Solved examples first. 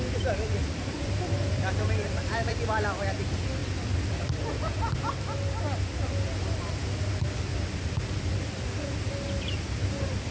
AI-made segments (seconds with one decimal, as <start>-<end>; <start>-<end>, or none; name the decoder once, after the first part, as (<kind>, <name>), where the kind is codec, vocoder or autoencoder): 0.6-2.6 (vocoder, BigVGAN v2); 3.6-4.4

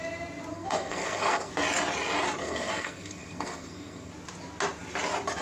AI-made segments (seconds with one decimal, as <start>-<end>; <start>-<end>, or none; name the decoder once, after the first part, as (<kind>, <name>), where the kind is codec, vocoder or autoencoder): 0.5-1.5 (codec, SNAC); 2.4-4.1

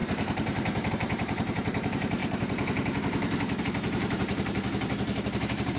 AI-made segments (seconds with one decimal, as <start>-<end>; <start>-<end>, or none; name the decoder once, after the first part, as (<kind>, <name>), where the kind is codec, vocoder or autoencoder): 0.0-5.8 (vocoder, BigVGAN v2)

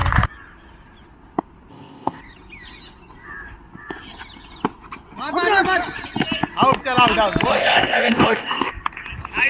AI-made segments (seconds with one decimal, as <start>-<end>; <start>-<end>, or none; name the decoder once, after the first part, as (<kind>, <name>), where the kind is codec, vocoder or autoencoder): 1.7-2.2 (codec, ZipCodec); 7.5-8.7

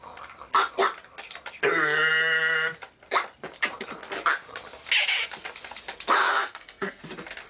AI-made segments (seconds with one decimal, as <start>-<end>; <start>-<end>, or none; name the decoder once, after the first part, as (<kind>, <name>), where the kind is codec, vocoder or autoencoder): 6.3-7.0 (codec, SNAC)

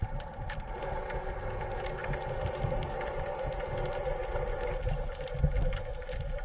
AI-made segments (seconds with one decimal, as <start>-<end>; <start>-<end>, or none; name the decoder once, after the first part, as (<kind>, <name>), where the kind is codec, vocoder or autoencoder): none